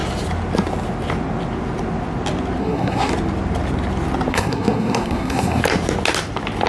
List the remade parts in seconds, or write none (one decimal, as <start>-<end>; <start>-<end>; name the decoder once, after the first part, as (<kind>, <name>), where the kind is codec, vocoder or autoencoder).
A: 2.6-3.1 (codec, SNAC); 4.3-5.6